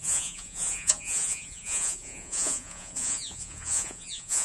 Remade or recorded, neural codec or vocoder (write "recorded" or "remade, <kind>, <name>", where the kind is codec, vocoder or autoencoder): remade, vocoder, Vocos